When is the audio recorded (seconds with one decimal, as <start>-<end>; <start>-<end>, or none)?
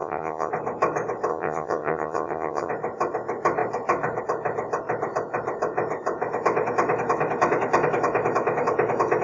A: 0.5-1.3; 2.7-9.2